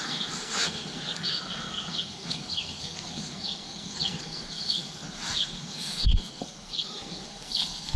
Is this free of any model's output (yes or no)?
no